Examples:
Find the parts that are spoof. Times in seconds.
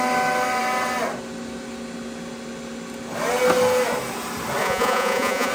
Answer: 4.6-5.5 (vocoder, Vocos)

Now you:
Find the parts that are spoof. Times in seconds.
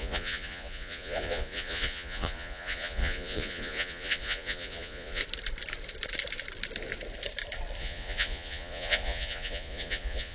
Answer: 0.0-5.2 (vocoder, Vocos); 7.8-10.3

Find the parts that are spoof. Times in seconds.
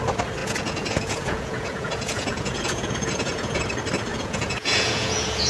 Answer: 0.4-3.6 (vocoder, Vocos); 4.1-5.5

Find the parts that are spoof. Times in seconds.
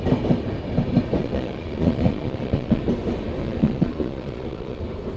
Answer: 1.2-2.8 (vocoder, Vocos); 3.4-4.8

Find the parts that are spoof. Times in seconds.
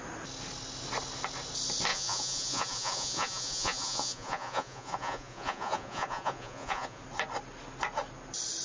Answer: 1.9-7.0 (vocoder, Vocos)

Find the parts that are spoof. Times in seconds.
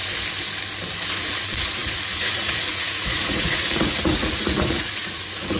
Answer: 1.1-5.6 (vocoder, Vocos)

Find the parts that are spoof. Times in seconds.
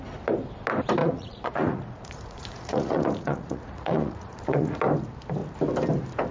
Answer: 1.0-4.8 (vocoder, Vocos)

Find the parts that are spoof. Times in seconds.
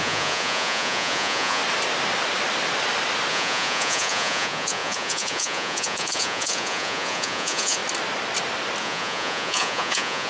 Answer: 0.0-1.6 (vocoder, Vocos); 3.3-7.8; 8.8-10.3